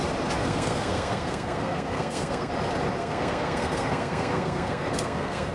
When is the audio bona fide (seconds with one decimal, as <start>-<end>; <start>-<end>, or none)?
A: 0.0-0.4; 2.5-3.0